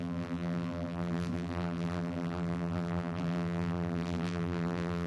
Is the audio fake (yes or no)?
yes